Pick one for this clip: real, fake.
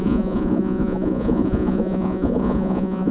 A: fake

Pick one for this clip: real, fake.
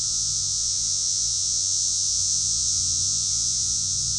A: fake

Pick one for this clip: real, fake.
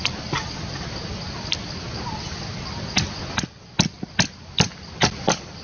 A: real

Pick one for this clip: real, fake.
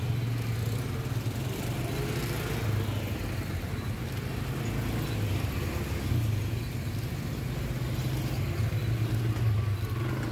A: real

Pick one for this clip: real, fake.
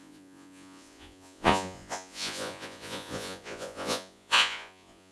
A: fake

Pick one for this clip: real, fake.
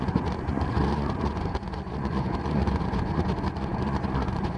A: fake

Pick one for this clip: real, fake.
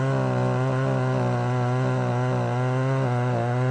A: real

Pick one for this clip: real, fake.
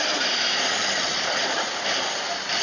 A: real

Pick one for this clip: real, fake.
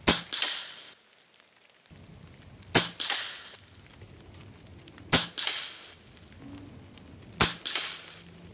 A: real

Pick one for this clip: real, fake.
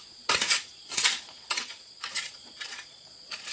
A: fake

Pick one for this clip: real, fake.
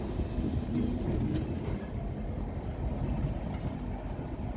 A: real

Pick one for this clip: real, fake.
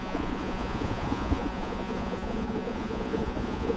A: fake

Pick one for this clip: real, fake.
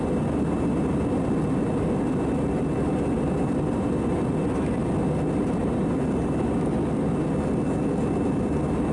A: real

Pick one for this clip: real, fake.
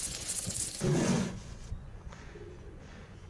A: fake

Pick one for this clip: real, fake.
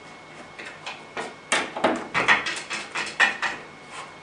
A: real